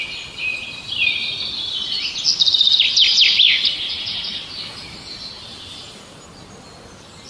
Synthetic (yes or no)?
no